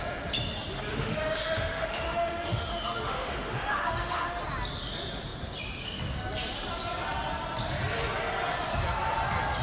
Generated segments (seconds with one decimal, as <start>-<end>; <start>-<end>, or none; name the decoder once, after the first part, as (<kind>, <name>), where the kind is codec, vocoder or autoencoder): 0.9-4.4 (autoencoder, DAC-VAE)